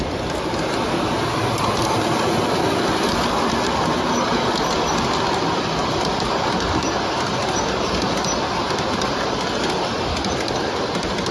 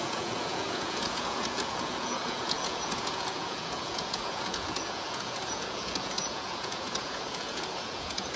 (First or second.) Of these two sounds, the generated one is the second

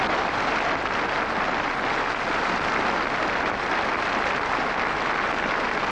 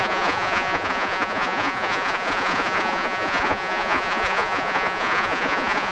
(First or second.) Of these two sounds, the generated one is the second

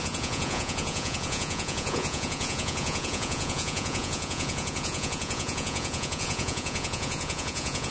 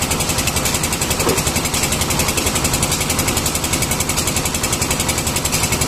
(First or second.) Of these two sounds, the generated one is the first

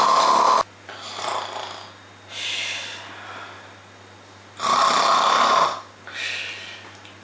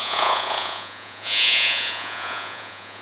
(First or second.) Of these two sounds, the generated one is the second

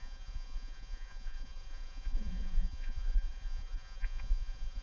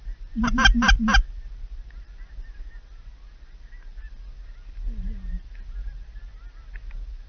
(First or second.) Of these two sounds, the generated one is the first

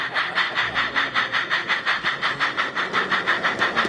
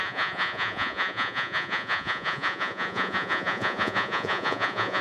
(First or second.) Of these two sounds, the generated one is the second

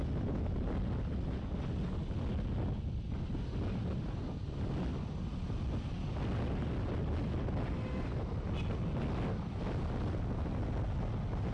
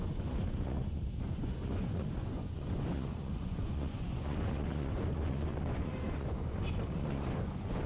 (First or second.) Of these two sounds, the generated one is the second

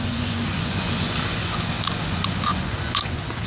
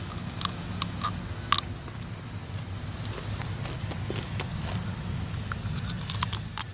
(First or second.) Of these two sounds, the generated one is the first